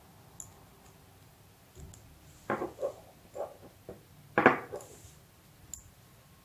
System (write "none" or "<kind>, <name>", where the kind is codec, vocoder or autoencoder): none